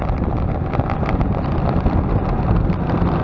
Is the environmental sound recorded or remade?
recorded